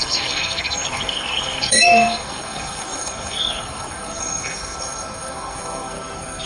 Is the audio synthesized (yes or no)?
yes